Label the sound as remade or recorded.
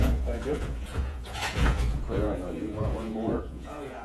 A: remade